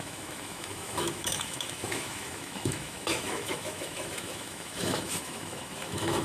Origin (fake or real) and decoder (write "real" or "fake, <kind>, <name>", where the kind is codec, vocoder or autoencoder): fake, autoencoder, DAC-VAE